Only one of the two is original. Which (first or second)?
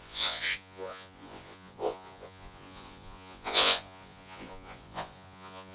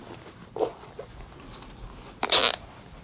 second